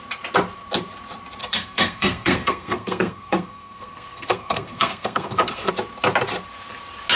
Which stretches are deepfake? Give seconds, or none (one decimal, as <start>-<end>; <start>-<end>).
1.4-5.7